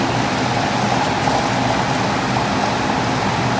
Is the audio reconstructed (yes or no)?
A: no